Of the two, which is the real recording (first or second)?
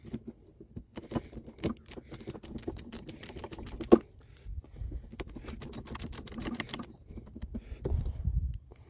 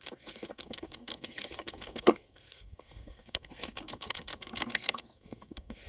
first